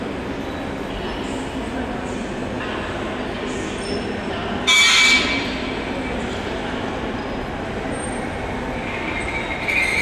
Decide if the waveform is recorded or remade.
recorded